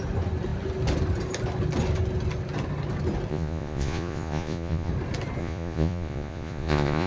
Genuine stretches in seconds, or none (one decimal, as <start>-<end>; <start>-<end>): 0.0-3.3; 4.9-5.4